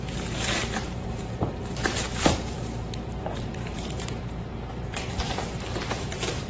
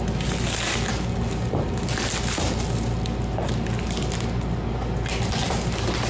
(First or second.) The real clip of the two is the second